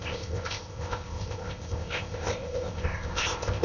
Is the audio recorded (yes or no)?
no